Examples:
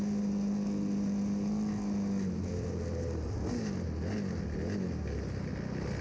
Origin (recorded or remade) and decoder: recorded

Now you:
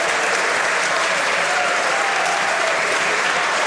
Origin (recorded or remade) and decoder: remade, vocoder, BigVGAN v2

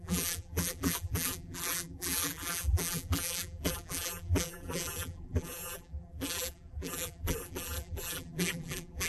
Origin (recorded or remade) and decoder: remade, vocoder, BigVGAN v2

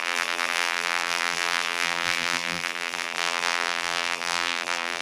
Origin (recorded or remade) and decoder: remade, vocoder, BigVGAN v2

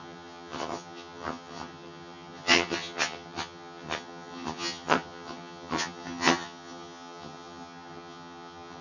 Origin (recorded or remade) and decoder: remade, vocoder, HiFi-GAN